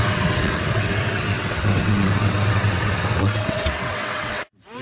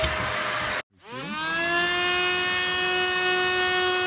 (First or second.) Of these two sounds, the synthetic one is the first